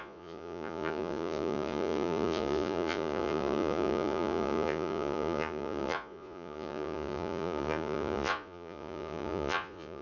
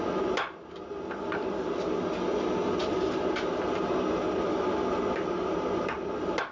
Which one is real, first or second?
second